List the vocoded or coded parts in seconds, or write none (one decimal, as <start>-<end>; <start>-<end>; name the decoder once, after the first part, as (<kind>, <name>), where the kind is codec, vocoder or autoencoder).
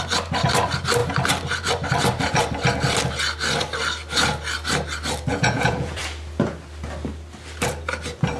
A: 5.3-6.0 (vocoder, Vocos)